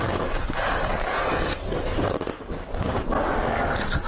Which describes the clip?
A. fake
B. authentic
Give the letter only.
B